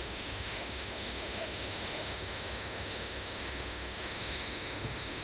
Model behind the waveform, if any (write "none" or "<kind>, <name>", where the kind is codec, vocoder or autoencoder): autoencoder, DAC-VAE